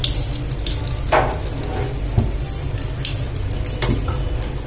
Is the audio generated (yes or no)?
no